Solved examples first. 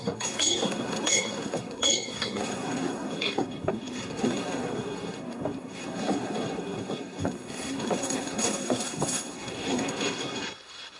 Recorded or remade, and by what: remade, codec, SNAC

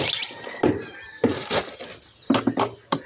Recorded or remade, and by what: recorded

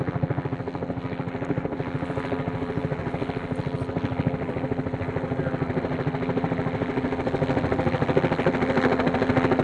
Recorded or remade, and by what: recorded